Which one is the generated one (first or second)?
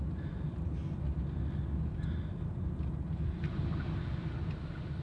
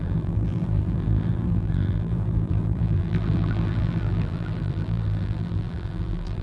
second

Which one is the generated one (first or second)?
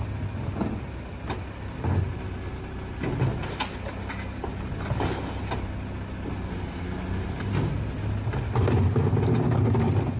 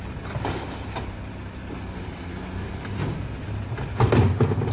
second